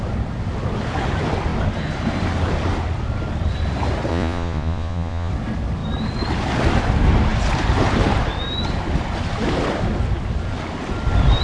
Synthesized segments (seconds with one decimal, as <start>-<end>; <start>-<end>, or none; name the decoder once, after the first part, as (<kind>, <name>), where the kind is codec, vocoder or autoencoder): 4.1-5.3 (vocoder, Vocos)